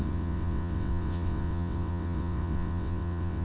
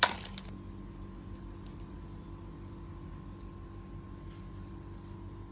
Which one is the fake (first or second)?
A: first